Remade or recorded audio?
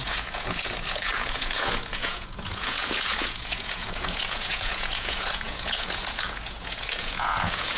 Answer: remade